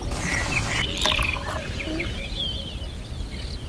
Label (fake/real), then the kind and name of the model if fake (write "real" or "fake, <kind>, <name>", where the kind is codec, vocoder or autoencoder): real